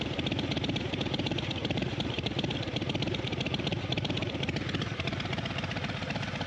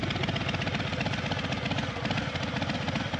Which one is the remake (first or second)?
first